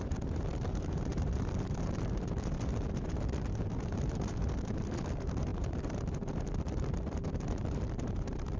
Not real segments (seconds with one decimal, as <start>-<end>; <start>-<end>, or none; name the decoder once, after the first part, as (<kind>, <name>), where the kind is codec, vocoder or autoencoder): 0.0-8.6 (vocoder, BigVGAN v2)

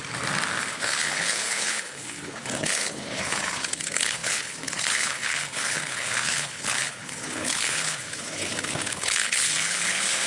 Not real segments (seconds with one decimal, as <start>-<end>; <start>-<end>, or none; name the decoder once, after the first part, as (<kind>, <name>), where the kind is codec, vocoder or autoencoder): 0.6-10.3 (codec, HILCodec)

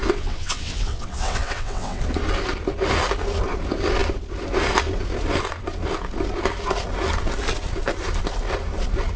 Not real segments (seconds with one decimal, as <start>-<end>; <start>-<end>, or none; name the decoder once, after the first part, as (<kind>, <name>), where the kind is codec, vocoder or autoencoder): 0.0-2.0 (vocoder, WaveNeXt)

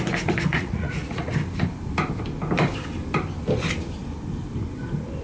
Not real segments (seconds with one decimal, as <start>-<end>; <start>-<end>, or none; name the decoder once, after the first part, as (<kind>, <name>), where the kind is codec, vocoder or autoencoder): 0.5-1.3 (vocoder, Vocos)